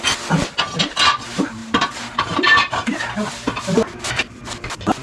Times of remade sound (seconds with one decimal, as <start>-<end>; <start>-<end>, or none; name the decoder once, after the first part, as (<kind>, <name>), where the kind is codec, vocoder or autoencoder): none